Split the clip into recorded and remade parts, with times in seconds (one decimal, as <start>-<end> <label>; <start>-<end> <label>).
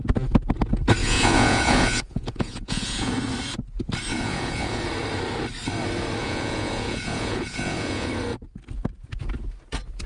0.0-1.0 recorded; 1.0-3.1 remade; 3.1-4.1 recorded; 4.1-4.8 remade; 4.8-6.2 recorded; 6.2-8.1 remade; 8.1-10.1 recorded